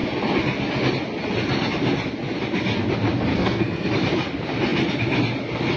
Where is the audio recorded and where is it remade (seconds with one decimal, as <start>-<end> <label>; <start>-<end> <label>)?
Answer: 0.0-3.3 recorded; 3.3-3.9 remade; 3.9-5.8 recorded